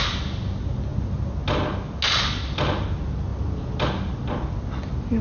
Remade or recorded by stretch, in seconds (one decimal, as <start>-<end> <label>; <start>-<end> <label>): 0.0-5.2 recorded

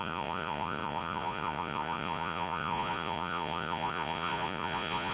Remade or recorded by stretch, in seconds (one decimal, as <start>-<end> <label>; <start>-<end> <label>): 0.0-5.1 remade